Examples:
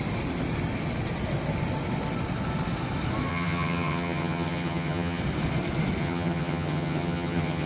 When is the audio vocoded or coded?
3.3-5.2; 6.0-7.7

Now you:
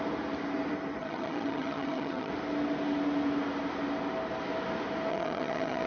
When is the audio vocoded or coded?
1.0-2.3; 5.1-5.9

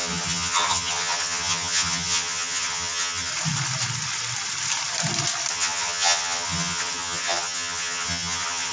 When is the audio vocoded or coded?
0.0-3.3; 5.5-8.7